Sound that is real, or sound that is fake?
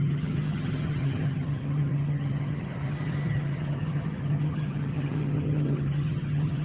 fake